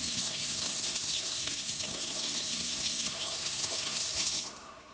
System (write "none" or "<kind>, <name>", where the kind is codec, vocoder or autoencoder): codec, SNAC